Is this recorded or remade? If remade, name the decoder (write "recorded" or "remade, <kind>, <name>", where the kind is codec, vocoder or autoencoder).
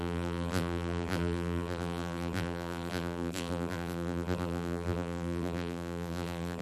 remade, vocoder, BigVGAN v2